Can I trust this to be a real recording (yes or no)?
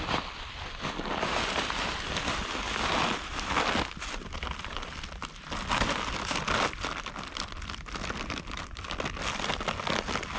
yes